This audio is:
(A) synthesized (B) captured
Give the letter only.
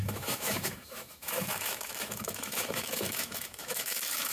A